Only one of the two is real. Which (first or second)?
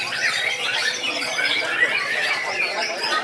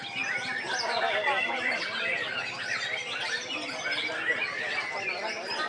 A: second